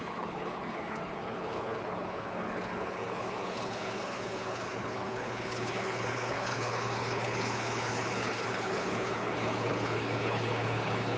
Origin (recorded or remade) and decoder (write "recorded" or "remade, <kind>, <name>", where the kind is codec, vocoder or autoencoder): remade, codec, HILCodec